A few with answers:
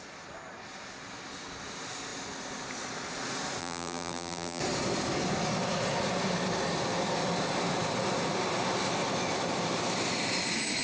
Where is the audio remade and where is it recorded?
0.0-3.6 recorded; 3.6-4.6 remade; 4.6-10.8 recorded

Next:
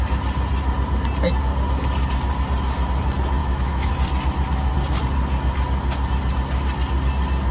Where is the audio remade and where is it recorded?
0.0-3.4 recorded; 3.4-3.9 remade; 3.9-7.5 recorded

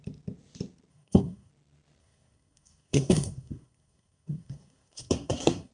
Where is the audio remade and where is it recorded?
0.0-0.9 recorded; 0.9-1.5 remade; 1.5-2.0 recorded; 2.0-5.7 remade

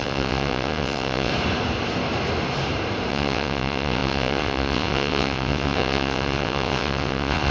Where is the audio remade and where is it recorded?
0.0-1.3 remade; 1.3-3.1 recorded; 3.1-7.5 remade

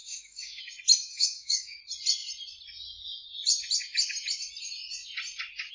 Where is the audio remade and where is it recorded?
0.0-0.6 remade; 0.6-1.1 recorded; 1.1-1.8 remade; 1.8-5.7 recorded

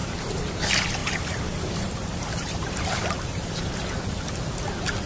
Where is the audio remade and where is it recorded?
0.0-0.5 remade; 0.5-1.0 recorded; 1.0-3.7 remade; 3.7-5.1 recorded

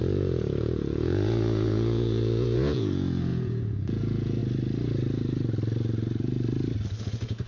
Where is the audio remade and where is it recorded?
0.0-4.4 remade; 4.4-7.0 recorded; 7.0-7.5 remade